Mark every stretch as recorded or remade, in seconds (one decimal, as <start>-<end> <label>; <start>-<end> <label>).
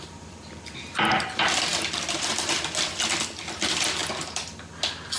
0.0-4.0 remade; 4.0-5.2 recorded